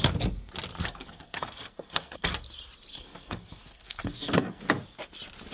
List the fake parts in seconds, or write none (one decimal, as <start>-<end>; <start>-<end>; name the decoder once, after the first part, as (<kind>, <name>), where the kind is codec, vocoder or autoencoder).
0.8-2.3 (codec, SNAC); 2.9-4.6